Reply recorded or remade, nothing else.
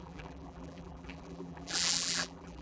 remade